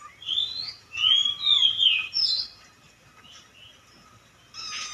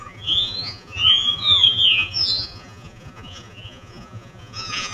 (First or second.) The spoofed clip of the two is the second